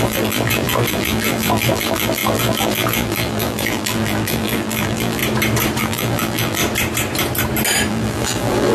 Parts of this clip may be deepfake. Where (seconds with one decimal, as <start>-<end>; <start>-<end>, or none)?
0.0-5.2; 5.8-6.6; 7.9-8.7